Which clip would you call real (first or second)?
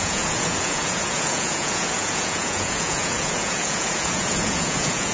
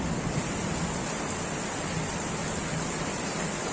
second